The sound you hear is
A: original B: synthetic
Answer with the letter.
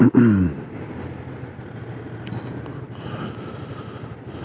A